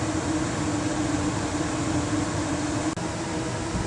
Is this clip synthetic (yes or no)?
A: no